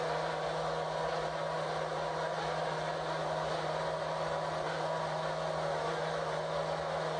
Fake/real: real